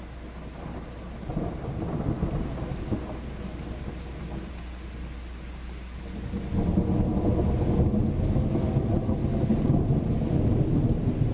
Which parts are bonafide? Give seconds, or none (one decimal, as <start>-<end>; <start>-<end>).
0.0-11.3